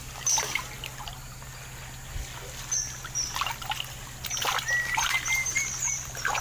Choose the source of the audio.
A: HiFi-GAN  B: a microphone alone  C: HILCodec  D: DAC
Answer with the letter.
B